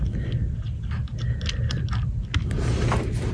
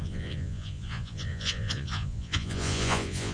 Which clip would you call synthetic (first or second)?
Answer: second